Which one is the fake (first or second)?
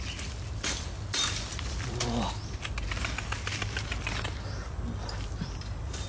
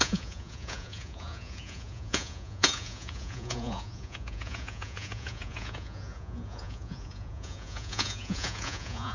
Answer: second